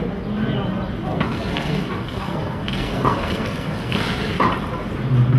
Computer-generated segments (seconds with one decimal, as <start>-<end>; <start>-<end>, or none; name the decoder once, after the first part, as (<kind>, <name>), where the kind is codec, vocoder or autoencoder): 1.1-4.3 (codec, SNAC)